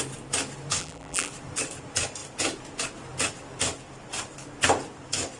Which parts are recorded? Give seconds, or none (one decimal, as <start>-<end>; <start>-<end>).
0.0-0.8; 1.3-5.4